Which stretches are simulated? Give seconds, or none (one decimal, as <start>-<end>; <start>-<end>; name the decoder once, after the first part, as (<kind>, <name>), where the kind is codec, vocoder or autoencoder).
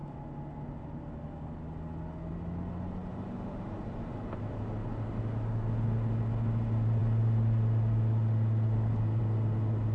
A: 3.1-4.7 (vocoder, BigVGAN v2)